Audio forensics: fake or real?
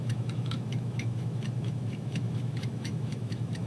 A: fake